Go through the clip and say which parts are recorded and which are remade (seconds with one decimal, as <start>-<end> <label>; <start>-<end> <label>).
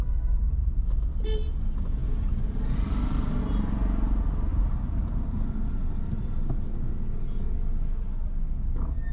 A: 0.0-4.5 recorded; 4.5-6.7 remade; 6.7-9.1 recorded